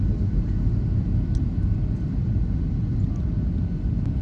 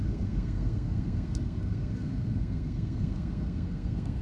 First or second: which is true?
first